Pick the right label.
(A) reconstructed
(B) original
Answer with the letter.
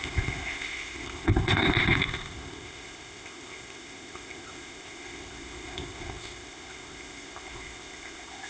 A